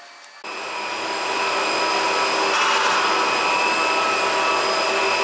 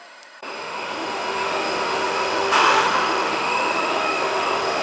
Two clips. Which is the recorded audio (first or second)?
first